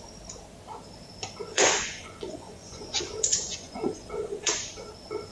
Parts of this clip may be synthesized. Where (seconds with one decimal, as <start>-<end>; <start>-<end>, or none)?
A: 1.5-4.7